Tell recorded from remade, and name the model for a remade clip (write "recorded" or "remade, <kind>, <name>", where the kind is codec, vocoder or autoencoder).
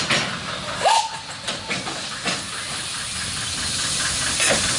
recorded